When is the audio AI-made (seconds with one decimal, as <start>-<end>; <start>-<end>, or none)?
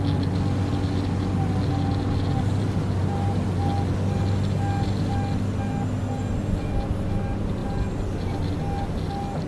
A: none